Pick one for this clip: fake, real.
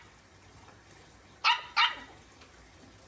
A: real